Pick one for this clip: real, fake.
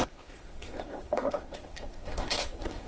fake